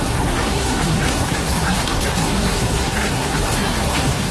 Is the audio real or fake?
fake